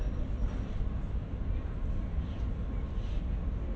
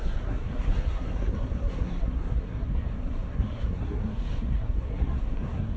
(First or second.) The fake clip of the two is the second